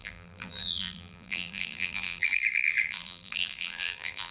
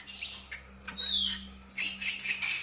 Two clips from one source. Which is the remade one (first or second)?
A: first